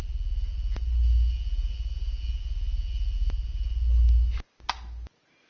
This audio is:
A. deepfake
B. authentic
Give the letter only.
B